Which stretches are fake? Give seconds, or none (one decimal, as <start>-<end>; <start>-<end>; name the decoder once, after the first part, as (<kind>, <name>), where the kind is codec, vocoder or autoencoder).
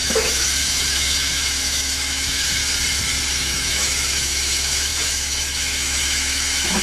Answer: 0.0-2.6 (autoencoder, DAC-VAE); 3.3-6.8